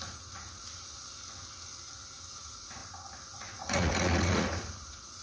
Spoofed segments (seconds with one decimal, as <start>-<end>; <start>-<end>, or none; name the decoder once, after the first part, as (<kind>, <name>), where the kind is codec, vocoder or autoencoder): 0.0-1.0 (vocoder, Vocos); 2.4-2.8; 3.4-5.2